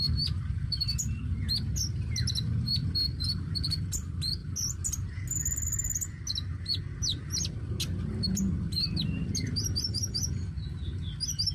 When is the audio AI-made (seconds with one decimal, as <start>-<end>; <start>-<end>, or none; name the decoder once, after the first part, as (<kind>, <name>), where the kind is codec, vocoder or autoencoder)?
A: none